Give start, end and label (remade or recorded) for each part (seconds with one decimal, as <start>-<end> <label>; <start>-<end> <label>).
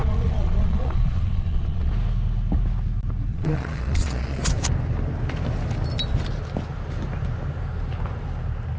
0.0-1.9 remade; 1.9-3.3 recorded; 3.3-4.4 remade; 4.4-8.8 recorded